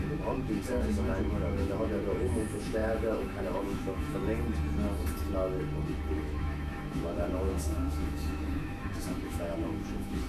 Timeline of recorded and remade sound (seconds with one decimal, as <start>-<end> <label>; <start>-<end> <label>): 0.0-4.2 remade; 4.2-6.1 recorded; 6.1-10.3 remade